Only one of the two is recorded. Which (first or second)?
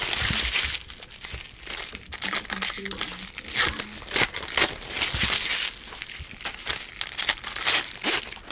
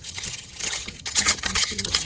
first